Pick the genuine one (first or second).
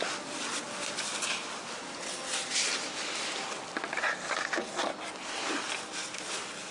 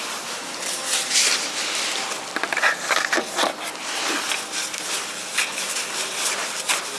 first